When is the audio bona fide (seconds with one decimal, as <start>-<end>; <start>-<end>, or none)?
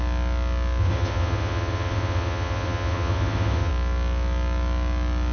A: 0.0-0.8; 3.7-5.3